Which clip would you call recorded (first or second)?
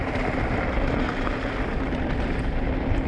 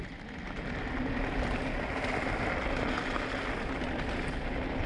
second